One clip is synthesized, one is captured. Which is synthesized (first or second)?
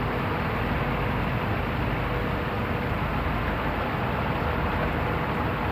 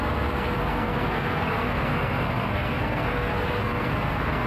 second